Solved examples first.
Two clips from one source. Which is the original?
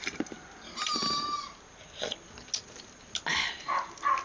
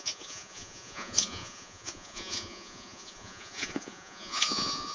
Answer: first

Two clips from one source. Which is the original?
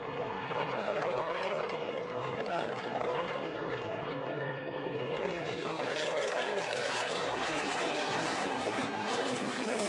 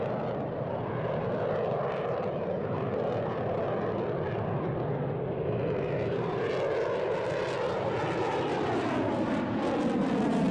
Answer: second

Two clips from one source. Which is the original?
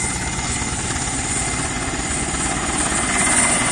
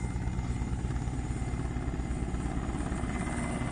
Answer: second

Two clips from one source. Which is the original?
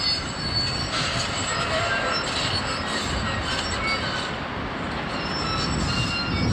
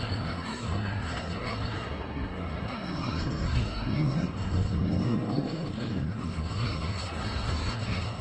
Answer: first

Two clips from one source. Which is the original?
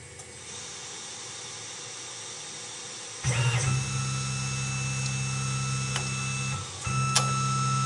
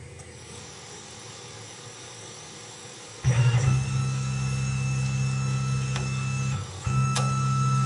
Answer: first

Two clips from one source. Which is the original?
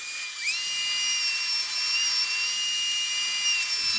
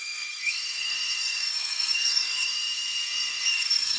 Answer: first